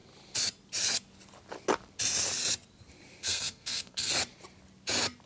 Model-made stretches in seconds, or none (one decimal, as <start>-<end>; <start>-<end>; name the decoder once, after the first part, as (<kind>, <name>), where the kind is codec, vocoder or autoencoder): 3.2-4.1 (codec, SNAC)